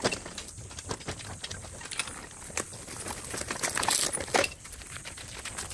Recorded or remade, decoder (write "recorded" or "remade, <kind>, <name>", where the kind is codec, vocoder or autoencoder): recorded